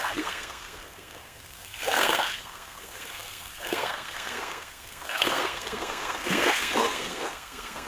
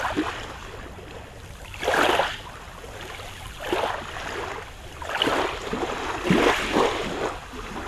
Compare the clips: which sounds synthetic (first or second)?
first